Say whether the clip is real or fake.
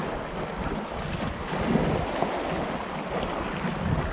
real